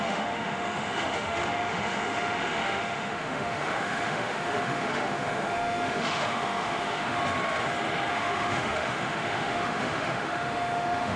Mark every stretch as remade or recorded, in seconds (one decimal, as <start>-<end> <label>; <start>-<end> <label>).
0.0-7.2 remade; 7.2-8.1 recorded; 8.1-11.2 remade